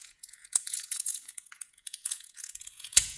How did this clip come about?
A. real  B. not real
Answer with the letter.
B